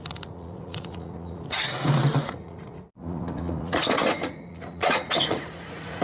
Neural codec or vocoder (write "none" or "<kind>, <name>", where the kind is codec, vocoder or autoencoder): vocoder, Vocos